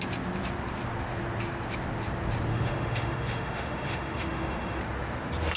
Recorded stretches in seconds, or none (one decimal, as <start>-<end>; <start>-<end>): 0.0-2.5; 4.8-5.6